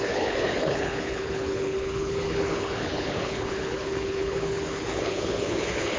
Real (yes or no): no